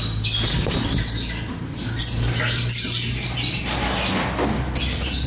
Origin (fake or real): real